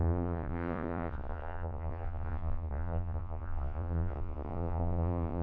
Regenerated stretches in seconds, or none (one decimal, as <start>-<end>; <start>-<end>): 0.0-5.4